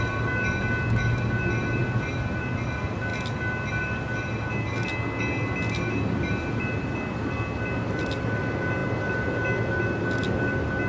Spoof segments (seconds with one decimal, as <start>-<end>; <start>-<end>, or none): none